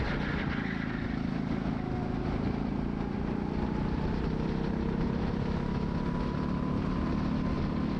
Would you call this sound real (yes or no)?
yes